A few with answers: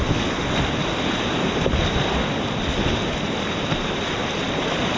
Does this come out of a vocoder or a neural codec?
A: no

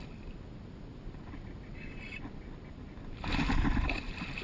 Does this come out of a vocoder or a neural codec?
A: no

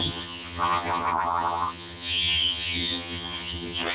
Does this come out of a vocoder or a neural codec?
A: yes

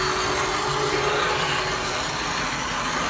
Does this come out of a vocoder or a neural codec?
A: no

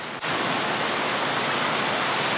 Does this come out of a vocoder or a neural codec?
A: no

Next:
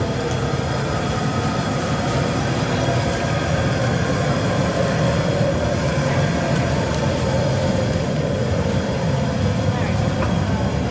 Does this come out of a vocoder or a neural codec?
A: no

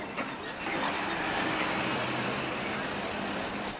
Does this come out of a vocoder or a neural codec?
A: no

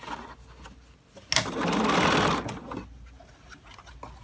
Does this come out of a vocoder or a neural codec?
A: no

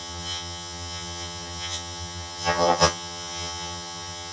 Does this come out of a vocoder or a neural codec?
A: yes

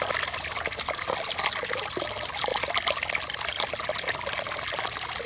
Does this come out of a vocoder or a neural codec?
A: no